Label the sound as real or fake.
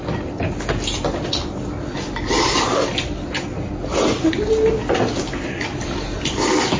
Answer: real